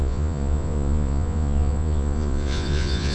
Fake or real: fake